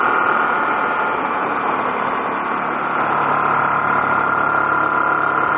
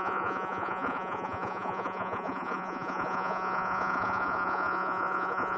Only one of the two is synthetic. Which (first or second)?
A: second